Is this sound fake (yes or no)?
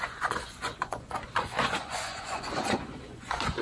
yes